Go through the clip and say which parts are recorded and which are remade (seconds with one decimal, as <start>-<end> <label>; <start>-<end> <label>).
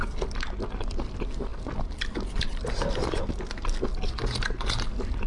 0.0-5.3 recorded